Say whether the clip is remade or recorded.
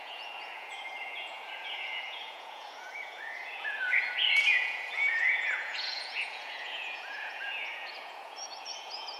remade